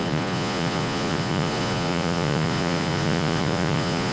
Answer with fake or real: fake